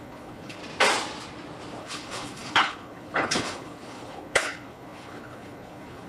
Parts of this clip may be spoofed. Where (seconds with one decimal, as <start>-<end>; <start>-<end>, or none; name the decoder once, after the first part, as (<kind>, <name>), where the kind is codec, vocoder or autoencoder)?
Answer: 0.0-0.6 (codec, HILCodec); 1.8-6.1